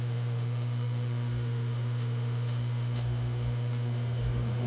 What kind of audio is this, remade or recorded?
remade